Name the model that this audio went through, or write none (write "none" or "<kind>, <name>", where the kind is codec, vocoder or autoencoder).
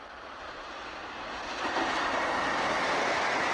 none